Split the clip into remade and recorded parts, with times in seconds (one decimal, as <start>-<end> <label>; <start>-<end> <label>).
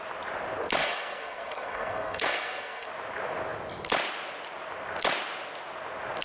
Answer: 0.0-0.8 recorded; 0.8-2.9 remade; 2.9-6.2 recorded